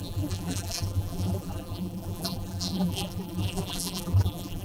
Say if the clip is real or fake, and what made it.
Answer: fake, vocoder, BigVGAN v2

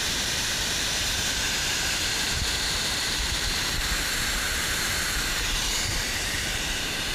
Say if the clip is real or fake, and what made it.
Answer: fake, vocoder, BigVGAN v2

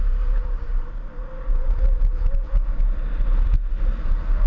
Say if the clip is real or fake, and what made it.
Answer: real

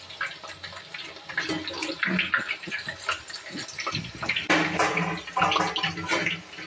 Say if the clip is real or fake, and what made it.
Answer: real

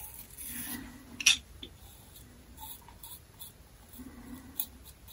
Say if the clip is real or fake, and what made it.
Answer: real